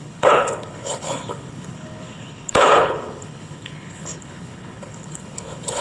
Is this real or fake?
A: fake